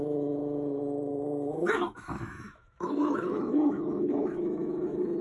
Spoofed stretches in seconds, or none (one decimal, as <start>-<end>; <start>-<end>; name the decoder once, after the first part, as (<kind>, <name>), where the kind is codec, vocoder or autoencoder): 0.0-0.4 (autoencoder, DAC-VAE); 1.1-5.2